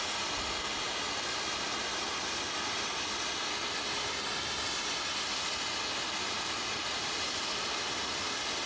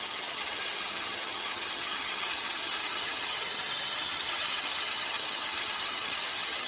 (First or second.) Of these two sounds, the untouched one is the first